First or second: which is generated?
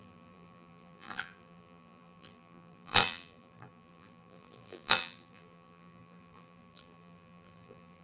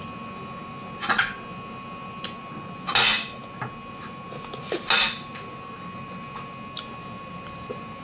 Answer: first